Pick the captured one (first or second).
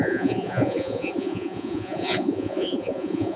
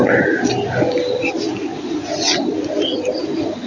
second